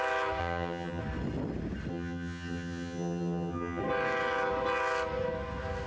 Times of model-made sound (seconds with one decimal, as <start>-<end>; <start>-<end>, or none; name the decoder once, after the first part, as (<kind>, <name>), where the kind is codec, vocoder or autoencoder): 0.4-1.0 (vocoder, HiFi-GAN); 1.9-3.8